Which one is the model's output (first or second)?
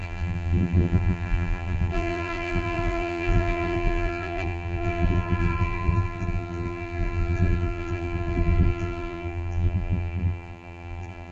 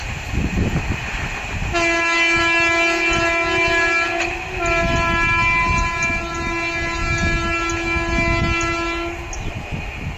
first